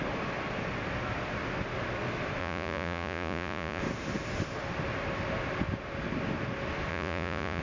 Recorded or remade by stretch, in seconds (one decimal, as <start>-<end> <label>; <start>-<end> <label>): 0.0-2.4 recorded; 2.4-3.8 remade; 3.8-6.9 recorded; 6.9-7.6 remade